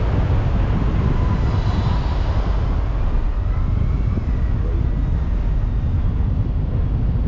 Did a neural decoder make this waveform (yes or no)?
no